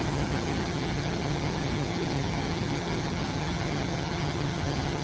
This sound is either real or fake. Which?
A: fake